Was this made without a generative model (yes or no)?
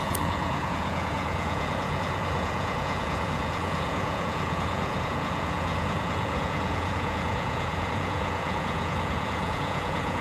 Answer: no